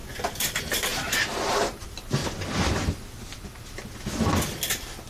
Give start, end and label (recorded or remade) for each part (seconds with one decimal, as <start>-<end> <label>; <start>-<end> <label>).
0.0-2.2 remade; 2.2-5.1 recorded